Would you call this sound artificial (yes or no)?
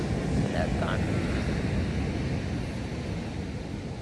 no